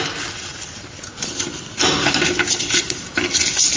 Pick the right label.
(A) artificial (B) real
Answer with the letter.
B